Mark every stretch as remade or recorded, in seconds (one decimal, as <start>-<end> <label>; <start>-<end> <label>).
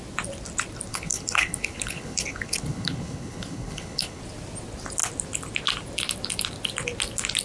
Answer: 0.0-0.9 recorded; 0.9-4.2 remade; 4.2-7.4 recorded